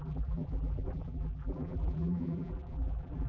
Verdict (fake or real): fake